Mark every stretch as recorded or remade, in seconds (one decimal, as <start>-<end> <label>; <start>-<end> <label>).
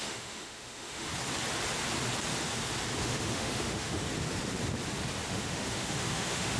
0.0-1.1 remade; 1.1-3.0 recorded; 3.0-4.1 remade; 4.1-5.3 recorded; 5.3-6.6 remade